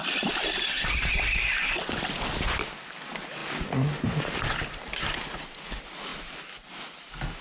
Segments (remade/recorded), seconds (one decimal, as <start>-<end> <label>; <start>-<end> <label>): 0.0-0.9 remade; 0.9-6.1 recorded; 6.1-7.0 remade; 7.0-7.4 recorded